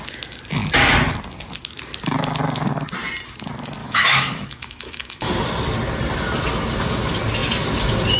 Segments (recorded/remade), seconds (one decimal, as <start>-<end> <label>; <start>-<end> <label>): 0.0-3.8 recorded; 3.8-5.3 remade; 5.3-8.2 recorded